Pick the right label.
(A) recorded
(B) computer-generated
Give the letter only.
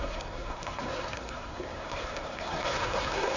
B